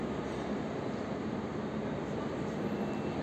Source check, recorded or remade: recorded